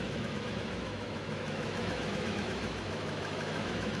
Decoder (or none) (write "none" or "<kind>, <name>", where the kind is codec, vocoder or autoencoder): autoencoder, DAC-VAE